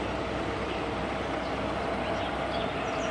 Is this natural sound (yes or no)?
yes